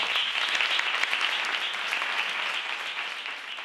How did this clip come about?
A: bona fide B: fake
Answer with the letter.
A